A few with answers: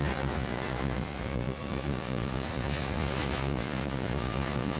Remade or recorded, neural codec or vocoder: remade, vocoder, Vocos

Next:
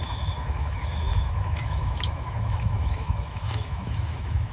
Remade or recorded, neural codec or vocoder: remade, autoencoder, DAC-VAE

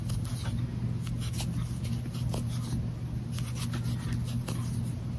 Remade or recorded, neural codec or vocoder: recorded